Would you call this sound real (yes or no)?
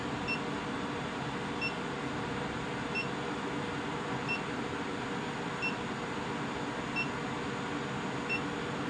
yes